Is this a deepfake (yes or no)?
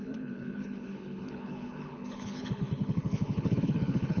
yes